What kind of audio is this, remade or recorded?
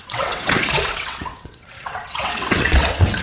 remade